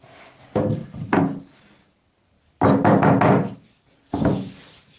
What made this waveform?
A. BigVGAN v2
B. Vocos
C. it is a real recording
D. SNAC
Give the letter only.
C